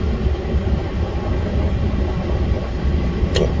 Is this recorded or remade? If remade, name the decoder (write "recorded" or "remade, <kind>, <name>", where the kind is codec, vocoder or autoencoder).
recorded